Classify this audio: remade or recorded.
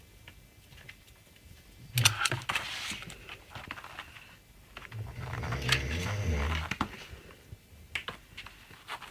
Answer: recorded